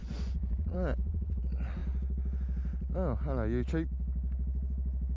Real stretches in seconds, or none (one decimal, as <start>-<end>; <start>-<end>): 1.4-5.2